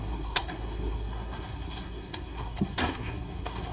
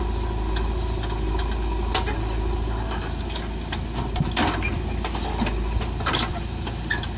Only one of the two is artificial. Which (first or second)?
first